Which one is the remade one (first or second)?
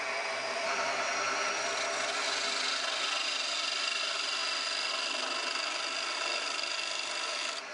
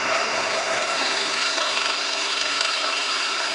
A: second